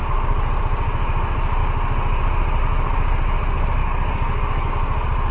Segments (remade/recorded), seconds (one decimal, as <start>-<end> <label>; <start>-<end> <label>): 0.0-3.8 recorded; 3.8-4.7 remade; 4.7-5.3 recorded